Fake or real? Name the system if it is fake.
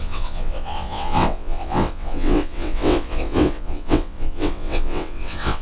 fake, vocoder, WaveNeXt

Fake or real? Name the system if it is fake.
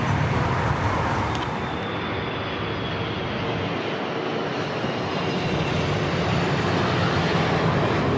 real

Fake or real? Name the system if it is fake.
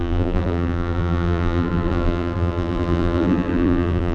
fake, vocoder, BigVGAN v2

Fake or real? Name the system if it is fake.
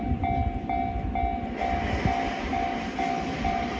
real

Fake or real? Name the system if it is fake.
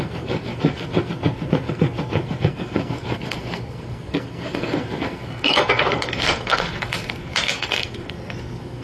fake, codec, SNAC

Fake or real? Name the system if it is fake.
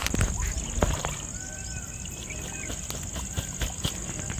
real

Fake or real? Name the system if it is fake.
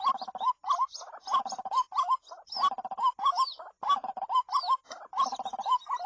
real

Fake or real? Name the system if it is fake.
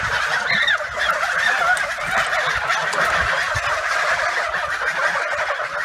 real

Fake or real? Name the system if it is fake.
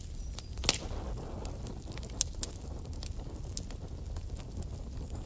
real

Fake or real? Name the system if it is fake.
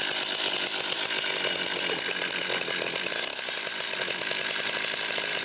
real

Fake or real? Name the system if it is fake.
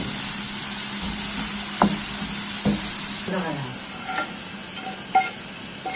real